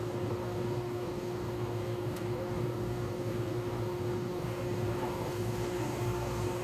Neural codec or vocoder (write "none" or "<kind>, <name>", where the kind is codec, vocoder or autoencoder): codec, DAC